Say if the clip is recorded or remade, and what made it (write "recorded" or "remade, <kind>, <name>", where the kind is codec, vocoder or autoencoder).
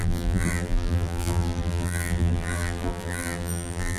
remade, vocoder, BigVGAN v2